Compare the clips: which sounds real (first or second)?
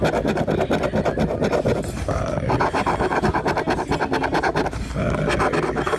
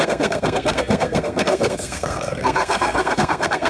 first